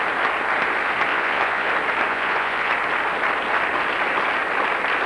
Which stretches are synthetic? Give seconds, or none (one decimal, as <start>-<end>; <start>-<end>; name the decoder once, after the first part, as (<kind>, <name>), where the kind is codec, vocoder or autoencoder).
1.1-1.7 (vocoder, Vocos); 2.1-2.7